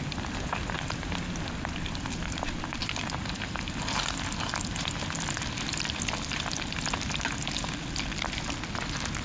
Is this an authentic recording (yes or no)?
yes